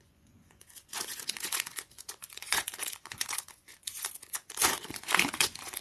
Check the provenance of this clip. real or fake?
fake